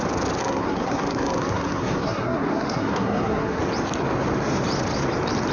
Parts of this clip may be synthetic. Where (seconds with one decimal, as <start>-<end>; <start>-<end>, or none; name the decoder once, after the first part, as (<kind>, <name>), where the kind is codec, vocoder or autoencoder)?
0.4-3.6 (codec, SNAC)